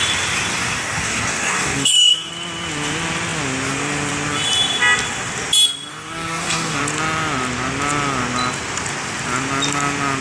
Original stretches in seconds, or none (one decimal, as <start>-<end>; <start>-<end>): 0.0-0.5; 2.3-5.9; 6.8-10.2